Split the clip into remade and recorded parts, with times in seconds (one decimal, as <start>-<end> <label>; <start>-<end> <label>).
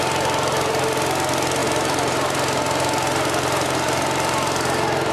0.0-1.6 recorded; 1.6-5.1 remade